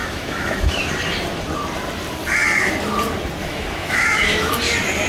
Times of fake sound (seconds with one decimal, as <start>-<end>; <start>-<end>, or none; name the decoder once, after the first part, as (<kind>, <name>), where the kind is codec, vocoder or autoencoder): 0.0-0.9 (autoencoder, DAC-VAE); 3.4-4.5